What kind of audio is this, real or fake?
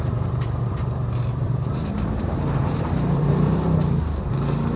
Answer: fake